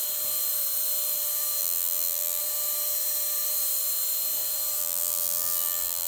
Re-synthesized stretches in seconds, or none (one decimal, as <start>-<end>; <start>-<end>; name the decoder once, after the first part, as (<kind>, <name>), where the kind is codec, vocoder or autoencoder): 1.6-2.4 (vocoder, BigVGAN v2); 4.8-6.1